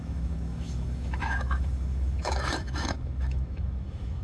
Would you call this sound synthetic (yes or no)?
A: yes